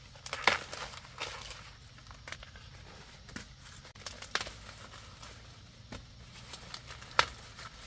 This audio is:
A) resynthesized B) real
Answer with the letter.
B